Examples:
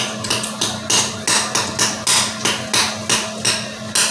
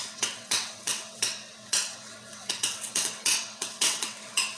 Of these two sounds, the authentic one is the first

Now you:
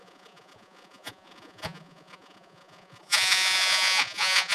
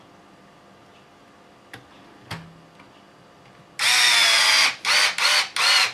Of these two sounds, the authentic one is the second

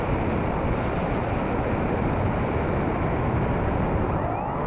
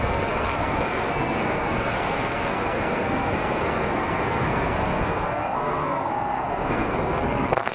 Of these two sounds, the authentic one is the first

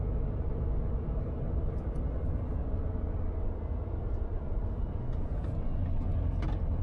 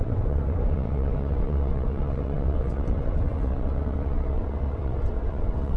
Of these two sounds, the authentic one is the first